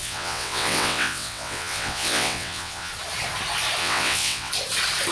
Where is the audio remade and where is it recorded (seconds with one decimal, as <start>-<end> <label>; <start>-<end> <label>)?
0.0-2.9 remade; 2.9-3.8 recorded; 3.8-4.5 remade; 4.5-5.1 recorded